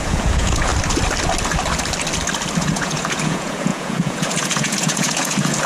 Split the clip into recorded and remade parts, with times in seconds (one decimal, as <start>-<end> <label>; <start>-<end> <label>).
0.0-0.7 remade; 0.7-2.6 recorded; 2.6-5.7 remade